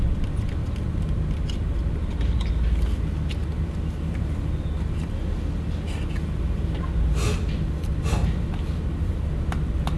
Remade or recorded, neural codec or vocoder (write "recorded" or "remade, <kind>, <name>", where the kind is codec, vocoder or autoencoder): recorded